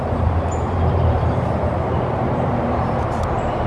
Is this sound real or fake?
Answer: fake